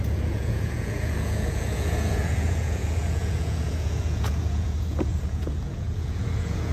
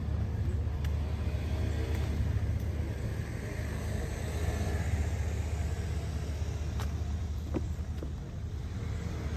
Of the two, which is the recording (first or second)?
second